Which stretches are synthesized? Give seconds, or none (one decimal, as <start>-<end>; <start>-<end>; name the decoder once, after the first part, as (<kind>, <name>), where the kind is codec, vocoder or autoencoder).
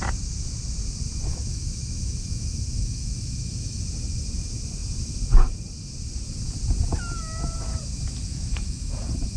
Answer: 1.3-3.8 (autoencoder, DAC-VAE); 8.3-8.9